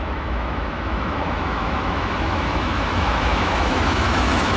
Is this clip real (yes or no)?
no